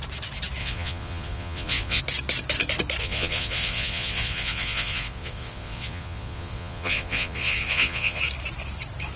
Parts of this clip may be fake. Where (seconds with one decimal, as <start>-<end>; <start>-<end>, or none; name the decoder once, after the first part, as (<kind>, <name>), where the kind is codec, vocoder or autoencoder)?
0.6-2.0 (vocoder, Vocos); 3.0-8.2